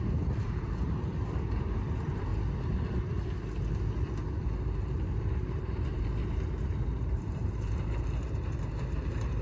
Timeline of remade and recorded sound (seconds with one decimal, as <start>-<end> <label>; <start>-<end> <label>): 0.0-2.3 remade; 2.3-4.4 recorded; 4.4-9.4 remade